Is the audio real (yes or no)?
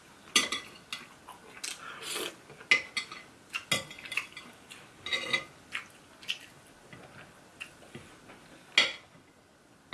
yes